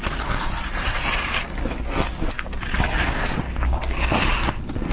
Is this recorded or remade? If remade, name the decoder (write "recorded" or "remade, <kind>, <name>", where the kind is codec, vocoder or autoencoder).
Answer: recorded